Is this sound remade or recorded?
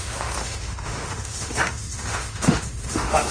remade